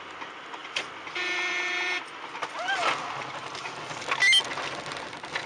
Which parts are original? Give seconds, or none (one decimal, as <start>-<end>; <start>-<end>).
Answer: 0.0-0.6; 3.9-5.5